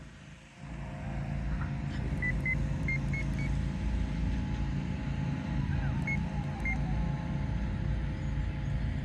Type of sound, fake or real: real